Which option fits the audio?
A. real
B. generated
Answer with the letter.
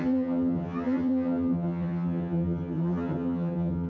B